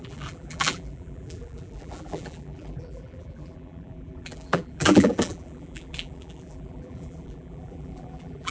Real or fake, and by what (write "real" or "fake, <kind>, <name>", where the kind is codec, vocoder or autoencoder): fake, vocoder, BigVGAN v2